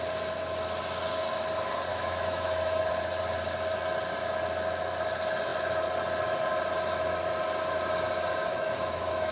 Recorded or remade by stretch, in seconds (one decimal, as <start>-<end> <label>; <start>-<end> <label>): 0.0-1.9 recorded; 1.9-2.9 remade; 2.9-8.4 recorded; 8.4-9.3 remade